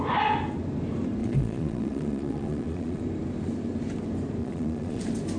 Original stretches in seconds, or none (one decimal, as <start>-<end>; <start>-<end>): 0.0-1.2; 3.0-4.4; 5.0-5.4